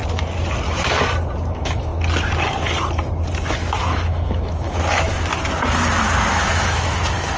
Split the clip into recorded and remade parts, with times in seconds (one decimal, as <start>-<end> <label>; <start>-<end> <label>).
0.0-1.5 recorded; 1.5-1.9 remade; 1.9-3.5 recorded; 3.5-5.1 remade; 5.1-6.3 recorded; 6.3-7.4 remade

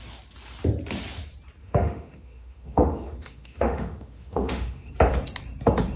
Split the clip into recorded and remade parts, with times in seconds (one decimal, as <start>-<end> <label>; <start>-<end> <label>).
0.0-1.6 recorded; 1.6-4.9 remade; 4.9-6.0 recorded

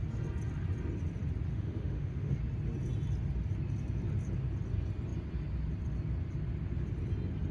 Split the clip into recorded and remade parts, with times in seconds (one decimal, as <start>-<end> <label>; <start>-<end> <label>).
0.0-1.5 recorded; 1.5-2.3 remade; 2.3-7.5 recorded